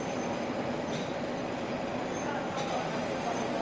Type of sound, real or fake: real